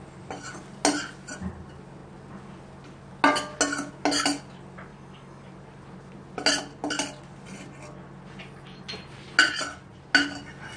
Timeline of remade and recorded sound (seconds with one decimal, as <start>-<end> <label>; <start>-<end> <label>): 0.0-4.9 recorded; 4.9-5.5 remade; 5.5-10.8 recorded